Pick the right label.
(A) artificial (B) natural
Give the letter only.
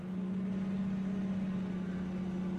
B